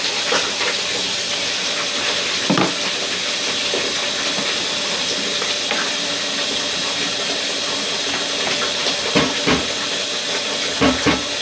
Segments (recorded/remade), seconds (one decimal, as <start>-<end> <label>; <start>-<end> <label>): 0.0-11.4 recorded